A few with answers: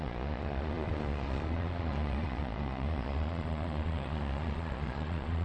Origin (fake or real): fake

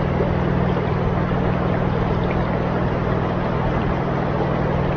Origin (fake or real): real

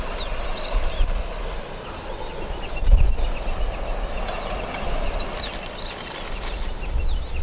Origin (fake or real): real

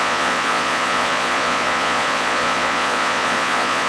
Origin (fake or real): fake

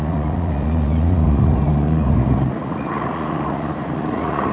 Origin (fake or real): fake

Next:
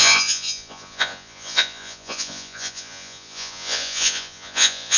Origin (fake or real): fake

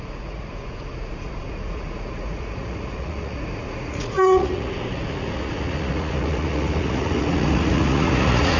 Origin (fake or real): fake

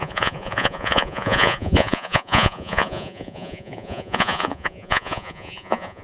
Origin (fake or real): fake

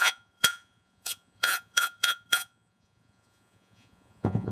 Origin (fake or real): fake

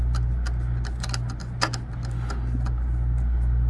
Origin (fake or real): real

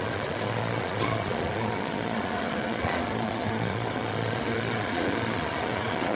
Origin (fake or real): fake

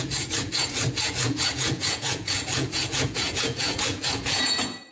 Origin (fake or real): fake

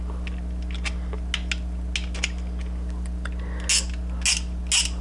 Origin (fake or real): real